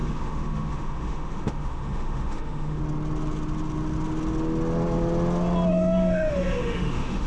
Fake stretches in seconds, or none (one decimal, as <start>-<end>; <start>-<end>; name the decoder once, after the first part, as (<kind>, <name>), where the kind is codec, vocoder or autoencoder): 0.0-2.8 (autoencoder, DAC-VAE); 5.7-7.3